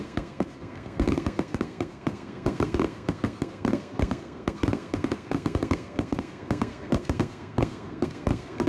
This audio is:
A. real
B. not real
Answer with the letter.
B